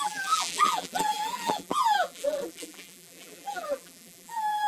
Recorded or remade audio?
remade